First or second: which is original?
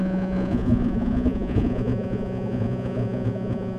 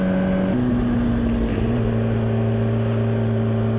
second